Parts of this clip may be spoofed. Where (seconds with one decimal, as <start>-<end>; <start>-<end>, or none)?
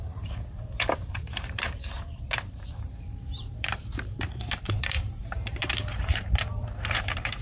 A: 0.0-7.4